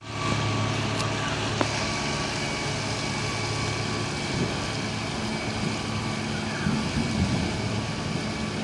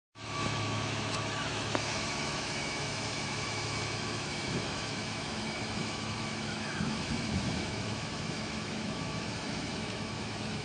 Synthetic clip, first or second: second